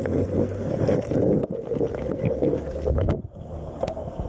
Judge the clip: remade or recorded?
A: remade